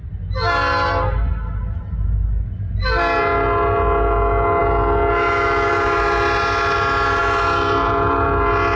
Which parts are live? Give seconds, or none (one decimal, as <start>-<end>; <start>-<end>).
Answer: 0.0-8.8

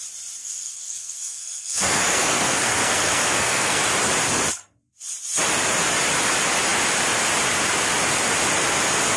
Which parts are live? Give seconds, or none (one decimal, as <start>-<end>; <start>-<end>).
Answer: 0.0-0.4; 3.8-9.2